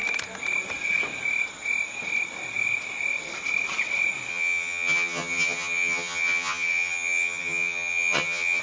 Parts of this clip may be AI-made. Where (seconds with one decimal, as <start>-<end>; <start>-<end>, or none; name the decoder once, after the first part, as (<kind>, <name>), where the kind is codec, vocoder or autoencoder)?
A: 4.3-8.6 (vocoder, HiFi-GAN)